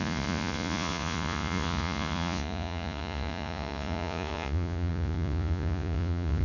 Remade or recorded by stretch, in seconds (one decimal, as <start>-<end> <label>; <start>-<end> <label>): 0.0-6.4 remade